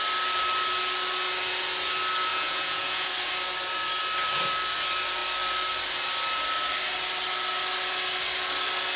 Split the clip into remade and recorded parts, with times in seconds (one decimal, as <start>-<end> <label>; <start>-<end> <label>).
0.0-2.3 recorded; 2.3-3.1 remade; 3.1-9.0 recorded